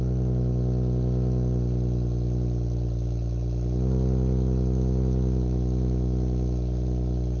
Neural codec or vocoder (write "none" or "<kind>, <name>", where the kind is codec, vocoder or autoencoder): none